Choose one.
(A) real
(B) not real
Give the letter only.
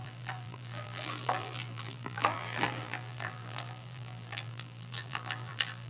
B